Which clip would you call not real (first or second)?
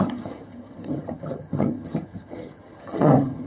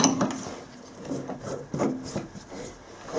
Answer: first